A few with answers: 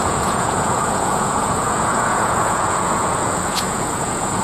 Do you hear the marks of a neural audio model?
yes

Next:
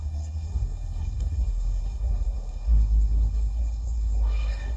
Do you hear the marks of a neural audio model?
yes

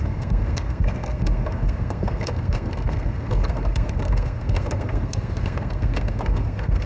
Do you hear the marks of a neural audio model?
yes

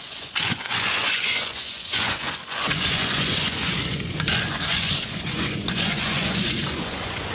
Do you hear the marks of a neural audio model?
yes